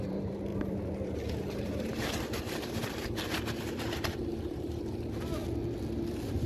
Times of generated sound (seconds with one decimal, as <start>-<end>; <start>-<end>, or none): 0.0-5.4; 6.1-6.5